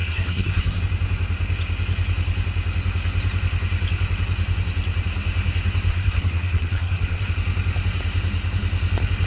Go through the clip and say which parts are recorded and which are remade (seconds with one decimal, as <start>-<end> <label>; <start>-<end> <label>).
0.0-0.8 remade; 0.8-5.9 recorded; 5.9-7.3 remade; 7.3-9.3 recorded